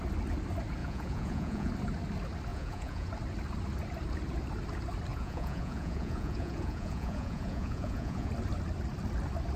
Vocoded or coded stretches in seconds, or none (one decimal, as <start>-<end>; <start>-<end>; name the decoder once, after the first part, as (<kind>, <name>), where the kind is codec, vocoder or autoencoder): 0.8-1.7 (vocoder, Vocos); 2.5-3.1; 5.1-8.3